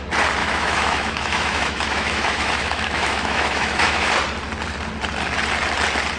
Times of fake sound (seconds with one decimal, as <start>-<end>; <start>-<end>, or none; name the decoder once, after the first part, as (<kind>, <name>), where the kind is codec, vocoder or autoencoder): 0.4-4.1 (autoencoder, DAC-VAE)